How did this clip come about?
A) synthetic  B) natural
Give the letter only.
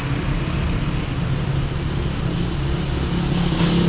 B